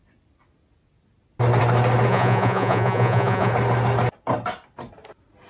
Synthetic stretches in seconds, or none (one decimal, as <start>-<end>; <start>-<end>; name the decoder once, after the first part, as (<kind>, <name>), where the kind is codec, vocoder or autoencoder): 2.1-3.5 (vocoder, Vocos)